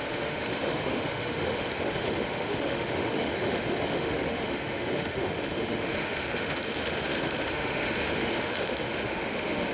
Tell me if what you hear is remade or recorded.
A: remade